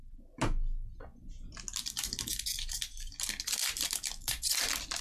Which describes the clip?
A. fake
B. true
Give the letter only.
B